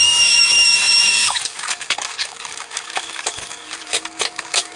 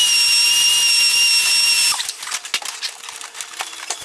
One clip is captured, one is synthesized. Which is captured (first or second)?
second